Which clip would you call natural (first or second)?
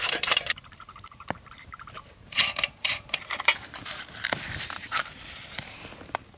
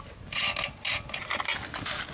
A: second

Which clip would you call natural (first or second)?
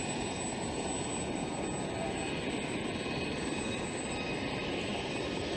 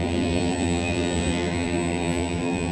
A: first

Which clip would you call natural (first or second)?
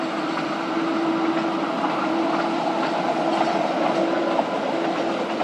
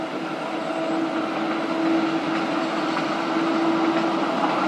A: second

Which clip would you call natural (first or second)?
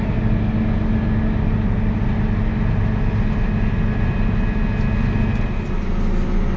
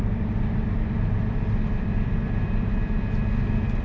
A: first